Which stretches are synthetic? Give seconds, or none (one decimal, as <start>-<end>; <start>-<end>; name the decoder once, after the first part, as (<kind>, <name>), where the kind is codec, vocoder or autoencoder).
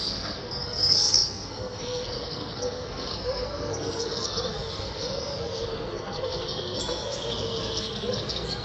0.0-8.6 (codec, SNAC)